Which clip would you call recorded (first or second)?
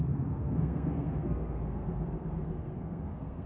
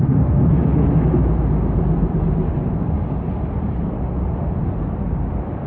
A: second